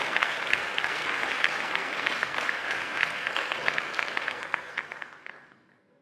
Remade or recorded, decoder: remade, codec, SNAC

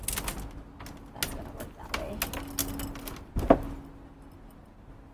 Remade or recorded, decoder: recorded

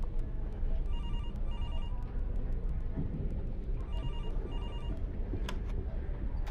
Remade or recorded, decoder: recorded